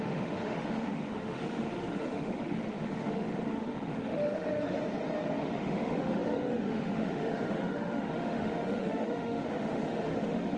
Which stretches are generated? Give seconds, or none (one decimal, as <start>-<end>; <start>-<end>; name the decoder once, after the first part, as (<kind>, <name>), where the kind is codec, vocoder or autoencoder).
0.0-4.8 (autoencoder, DAC-VAE); 5.4-10.6